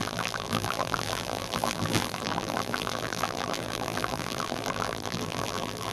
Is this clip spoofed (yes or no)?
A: yes